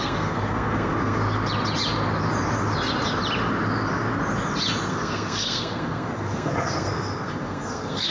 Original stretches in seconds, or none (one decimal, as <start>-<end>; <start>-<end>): 1.2-4.9